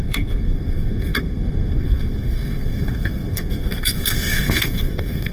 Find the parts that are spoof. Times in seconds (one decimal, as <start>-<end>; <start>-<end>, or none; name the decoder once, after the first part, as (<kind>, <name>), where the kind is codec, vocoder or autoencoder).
0.0-5.3 (codec, SNAC)

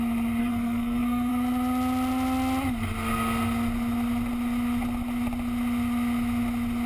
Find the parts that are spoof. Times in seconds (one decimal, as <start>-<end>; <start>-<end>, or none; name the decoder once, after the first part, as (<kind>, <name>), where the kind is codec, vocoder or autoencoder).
0.4-1.3 (codec, SNAC)